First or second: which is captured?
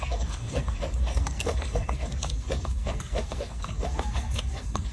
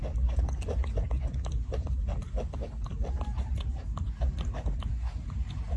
second